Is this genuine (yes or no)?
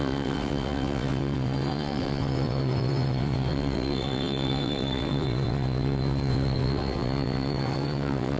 no